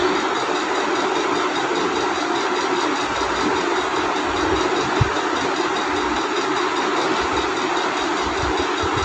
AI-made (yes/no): no